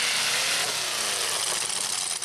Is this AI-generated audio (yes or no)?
no